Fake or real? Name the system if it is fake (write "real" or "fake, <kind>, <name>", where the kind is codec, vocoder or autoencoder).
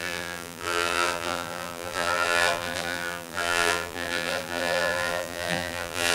fake, vocoder, BigVGAN v2